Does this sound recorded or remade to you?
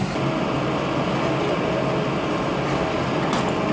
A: recorded